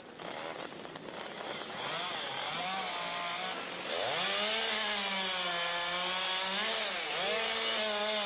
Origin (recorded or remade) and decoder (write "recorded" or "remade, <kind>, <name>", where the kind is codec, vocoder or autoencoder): recorded